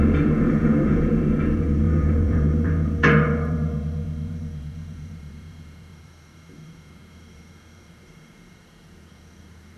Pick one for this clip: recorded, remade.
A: remade